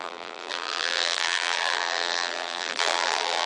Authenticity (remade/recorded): remade